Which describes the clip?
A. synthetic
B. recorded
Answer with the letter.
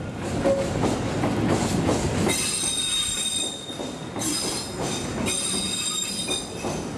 B